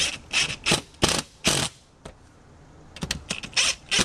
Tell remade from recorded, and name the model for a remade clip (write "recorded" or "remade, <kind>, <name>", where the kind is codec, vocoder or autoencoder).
recorded